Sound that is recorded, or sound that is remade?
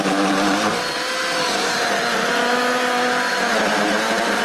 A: recorded